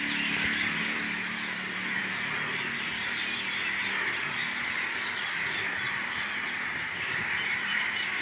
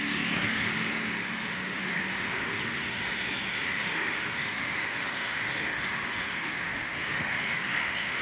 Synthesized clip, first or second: second